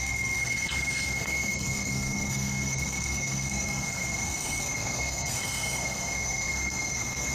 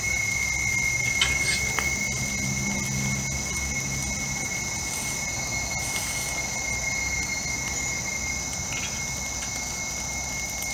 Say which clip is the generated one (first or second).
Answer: first